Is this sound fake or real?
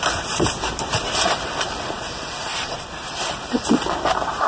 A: fake